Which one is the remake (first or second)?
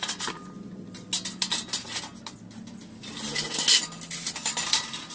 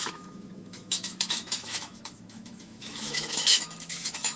second